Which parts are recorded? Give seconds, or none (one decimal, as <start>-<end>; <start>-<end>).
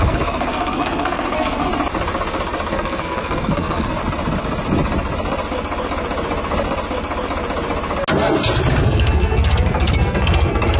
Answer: 1.7-2.7; 4.0-8.8